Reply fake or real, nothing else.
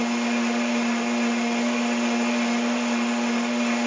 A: real